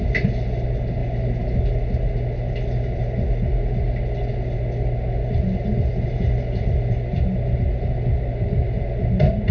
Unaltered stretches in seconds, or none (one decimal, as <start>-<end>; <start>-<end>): 0.0-9.5